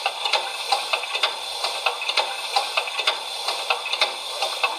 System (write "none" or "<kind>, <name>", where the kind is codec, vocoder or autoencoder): none